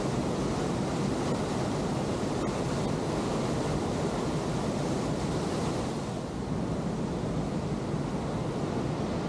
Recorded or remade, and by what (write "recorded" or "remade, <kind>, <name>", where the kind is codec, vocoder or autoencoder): recorded